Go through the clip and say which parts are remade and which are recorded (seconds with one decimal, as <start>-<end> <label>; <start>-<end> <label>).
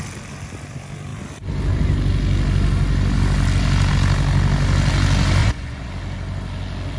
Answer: 0.0-5.4 recorded; 5.4-5.9 remade; 5.9-7.0 recorded